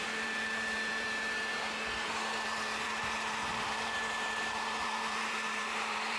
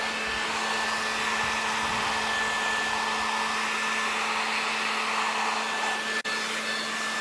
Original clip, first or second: second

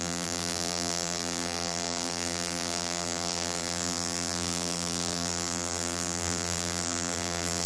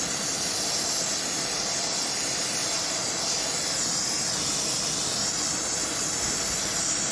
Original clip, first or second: second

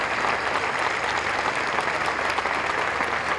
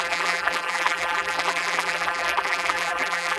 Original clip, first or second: first